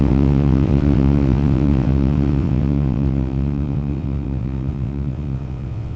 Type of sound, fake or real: fake